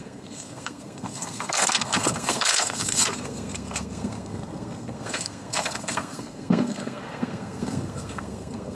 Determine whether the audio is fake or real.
fake